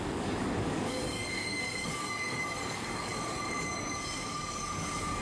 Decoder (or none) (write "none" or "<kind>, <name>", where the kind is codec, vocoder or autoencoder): codec, DAC